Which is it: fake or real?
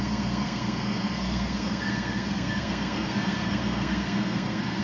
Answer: fake